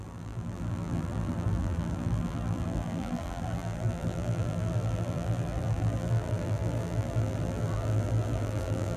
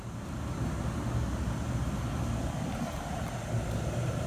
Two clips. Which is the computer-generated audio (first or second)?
first